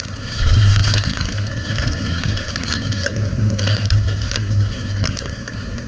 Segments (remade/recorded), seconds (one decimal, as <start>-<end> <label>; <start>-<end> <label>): 0.0-5.9 remade